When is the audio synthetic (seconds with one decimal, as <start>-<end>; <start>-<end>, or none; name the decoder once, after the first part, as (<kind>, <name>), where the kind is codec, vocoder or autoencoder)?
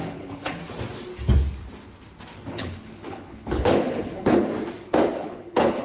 0.0-0.6 (codec, HILCodec); 2.5-4.5; 5.2-5.8